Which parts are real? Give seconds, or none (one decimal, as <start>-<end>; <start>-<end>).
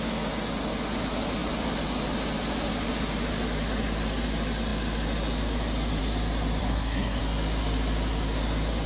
0.0-6.6; 7.2-8.9